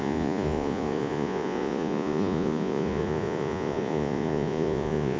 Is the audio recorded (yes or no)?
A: no